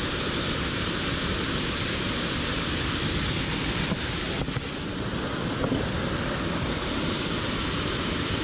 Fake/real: fake